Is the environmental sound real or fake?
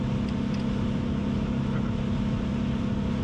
real